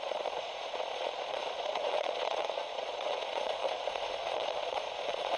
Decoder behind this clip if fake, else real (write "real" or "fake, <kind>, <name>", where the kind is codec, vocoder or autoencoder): fake, vocoder, Vocos